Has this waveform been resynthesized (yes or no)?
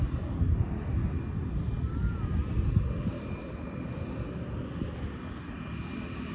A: no